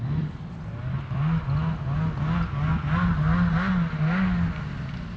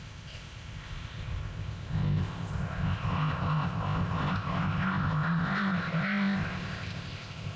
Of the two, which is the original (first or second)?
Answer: first